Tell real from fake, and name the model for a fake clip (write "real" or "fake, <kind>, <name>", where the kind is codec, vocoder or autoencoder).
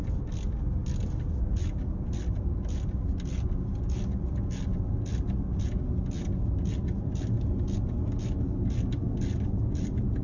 real